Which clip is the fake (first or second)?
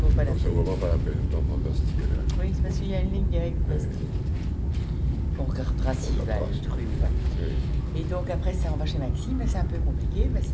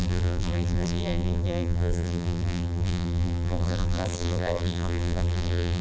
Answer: second